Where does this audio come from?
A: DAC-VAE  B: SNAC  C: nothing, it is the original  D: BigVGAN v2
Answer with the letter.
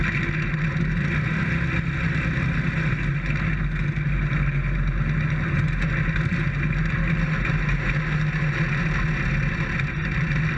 C